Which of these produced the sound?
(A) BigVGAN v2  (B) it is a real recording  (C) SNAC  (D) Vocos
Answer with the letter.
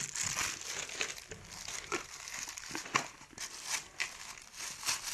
B